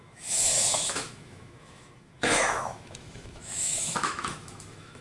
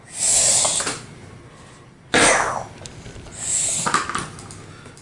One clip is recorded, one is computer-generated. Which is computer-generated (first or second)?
first